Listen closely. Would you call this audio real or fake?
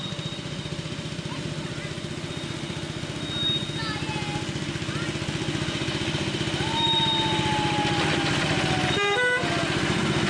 real